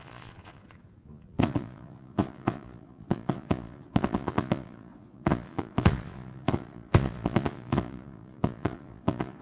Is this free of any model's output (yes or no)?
no